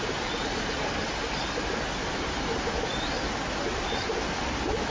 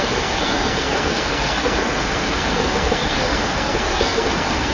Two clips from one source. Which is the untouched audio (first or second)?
first